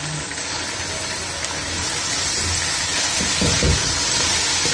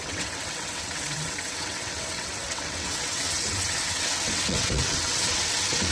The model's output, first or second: second